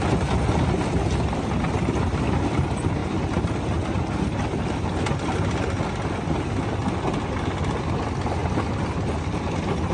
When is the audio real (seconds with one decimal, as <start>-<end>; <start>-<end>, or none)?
0.0-9.9